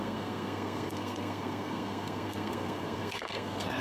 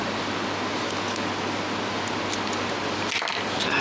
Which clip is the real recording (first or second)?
second